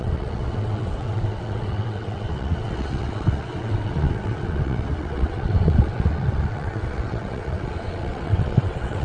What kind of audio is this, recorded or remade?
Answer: remade